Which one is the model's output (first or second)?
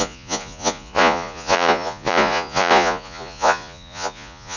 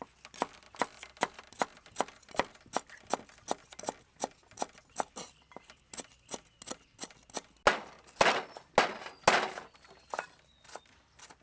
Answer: first